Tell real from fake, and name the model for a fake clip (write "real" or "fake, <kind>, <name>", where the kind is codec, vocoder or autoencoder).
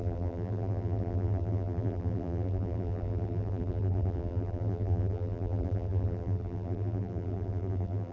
fake, vocoder, BigVGAN v2